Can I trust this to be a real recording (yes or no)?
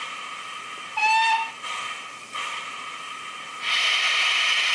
yes